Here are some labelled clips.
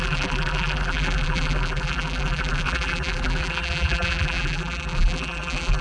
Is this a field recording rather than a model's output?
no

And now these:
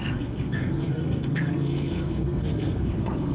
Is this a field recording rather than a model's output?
no